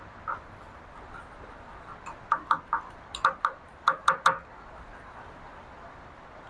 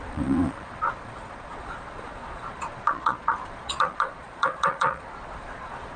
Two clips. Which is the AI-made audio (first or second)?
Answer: second